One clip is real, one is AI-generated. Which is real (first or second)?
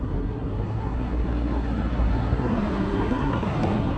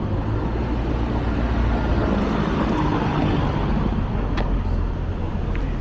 second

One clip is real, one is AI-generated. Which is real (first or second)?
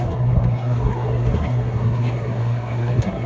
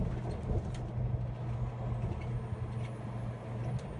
second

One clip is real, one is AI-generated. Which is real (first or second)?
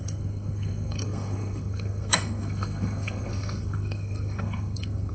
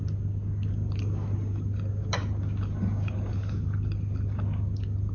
second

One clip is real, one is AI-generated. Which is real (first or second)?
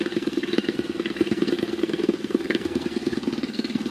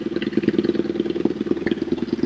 second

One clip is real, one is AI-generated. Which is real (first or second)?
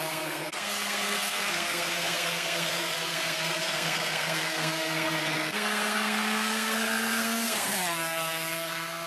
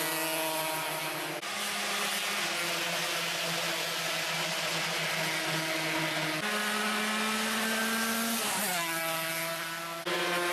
second